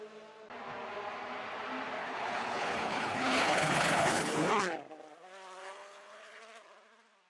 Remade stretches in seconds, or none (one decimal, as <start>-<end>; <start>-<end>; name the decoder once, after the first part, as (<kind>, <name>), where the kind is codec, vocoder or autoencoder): 2.0-4.5 (codec, HILCodec); 5.6-6.4